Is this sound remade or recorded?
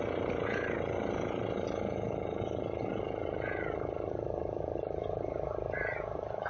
recorded